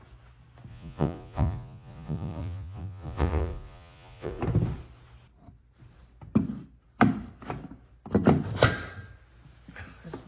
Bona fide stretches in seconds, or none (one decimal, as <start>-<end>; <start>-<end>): 0.0-0.7; 4.4-10.3